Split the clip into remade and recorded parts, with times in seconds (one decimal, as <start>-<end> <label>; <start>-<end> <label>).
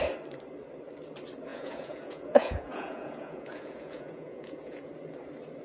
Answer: 0.0-1.5 recorded; 1.5-4.9 remade; 4.9-5.6 recorded